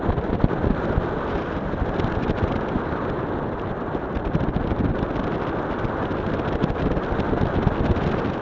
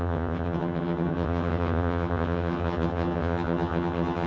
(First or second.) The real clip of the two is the first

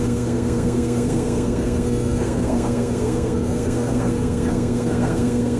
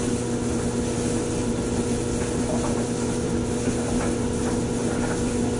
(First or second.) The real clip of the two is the second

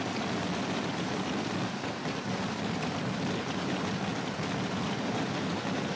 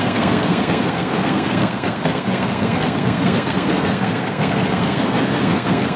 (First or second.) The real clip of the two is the first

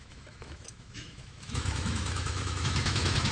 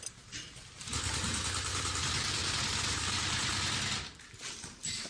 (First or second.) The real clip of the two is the second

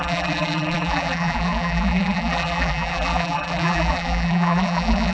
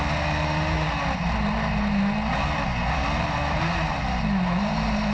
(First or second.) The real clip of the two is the second